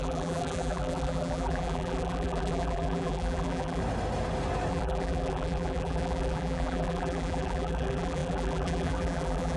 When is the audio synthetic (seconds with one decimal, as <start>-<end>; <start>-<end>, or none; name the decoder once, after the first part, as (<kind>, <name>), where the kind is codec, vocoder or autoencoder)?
0.0-3.8 (vocoder, BigVGAN v2); 4.7-9.6